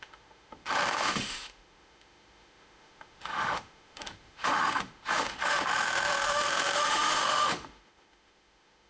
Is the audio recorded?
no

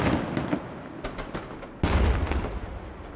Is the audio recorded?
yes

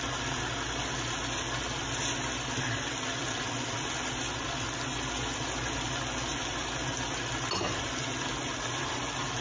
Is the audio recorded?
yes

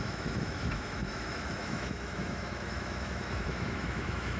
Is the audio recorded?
no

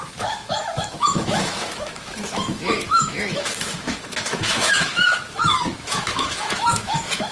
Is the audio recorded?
no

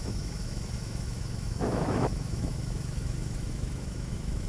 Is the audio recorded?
no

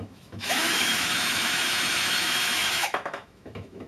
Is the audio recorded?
no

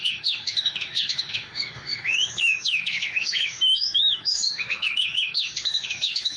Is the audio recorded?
no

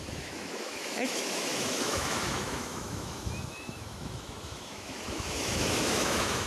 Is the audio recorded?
no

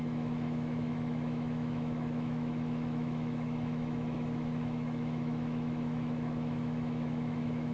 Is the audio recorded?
no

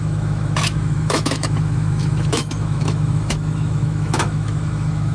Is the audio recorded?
no